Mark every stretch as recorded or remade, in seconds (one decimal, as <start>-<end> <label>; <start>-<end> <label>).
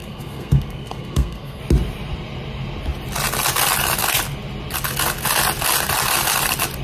0.0-1.6 remade; 1.6-6.8 recorded